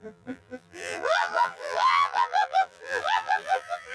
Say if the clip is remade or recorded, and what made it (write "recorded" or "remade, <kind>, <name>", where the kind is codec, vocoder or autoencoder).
remade, vocoder, BigVGAN v2